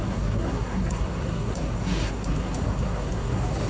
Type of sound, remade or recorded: remade